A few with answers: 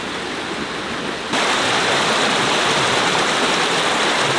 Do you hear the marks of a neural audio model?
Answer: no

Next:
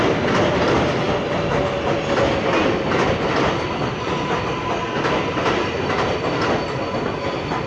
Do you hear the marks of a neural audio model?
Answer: no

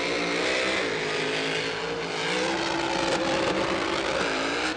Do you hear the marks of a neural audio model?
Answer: no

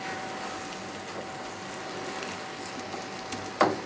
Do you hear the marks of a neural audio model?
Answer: no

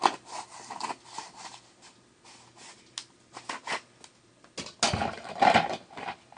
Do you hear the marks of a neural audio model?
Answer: no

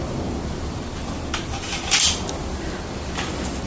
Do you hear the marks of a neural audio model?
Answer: no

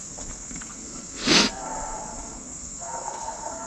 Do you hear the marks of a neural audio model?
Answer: yes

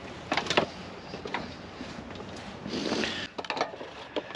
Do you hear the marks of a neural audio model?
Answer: no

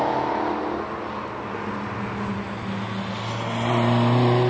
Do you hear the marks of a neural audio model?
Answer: no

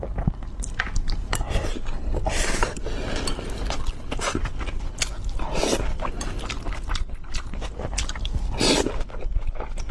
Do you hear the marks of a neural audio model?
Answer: no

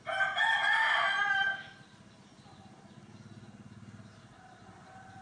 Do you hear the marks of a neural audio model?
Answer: no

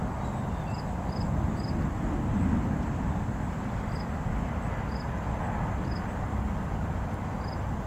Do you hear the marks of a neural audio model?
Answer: no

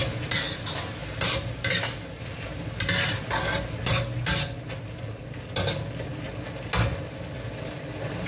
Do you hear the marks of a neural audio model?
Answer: no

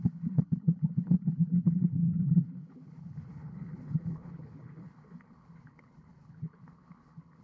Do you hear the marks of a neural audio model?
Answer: yes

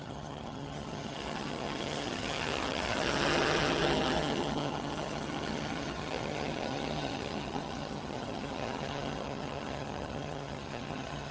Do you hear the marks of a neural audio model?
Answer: yes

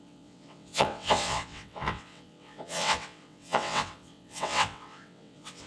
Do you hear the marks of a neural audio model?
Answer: yes